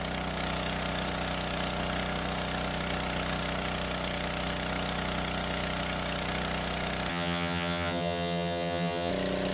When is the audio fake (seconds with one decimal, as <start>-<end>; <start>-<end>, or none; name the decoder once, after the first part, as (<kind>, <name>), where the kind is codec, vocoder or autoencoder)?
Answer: 7.1-9.1 (vocoder, HiFi-GAN)